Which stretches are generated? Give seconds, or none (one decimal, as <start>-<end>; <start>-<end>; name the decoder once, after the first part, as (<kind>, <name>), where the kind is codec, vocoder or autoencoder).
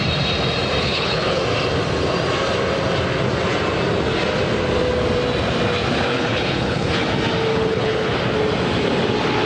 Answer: 0.8-1.4 (codec, HILCodec); 6.1-7.0; 7.5-8.1